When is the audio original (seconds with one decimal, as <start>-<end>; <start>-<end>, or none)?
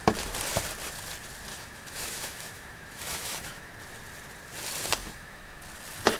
0.0-1.5; 3.7-5.0; 5.6-6.2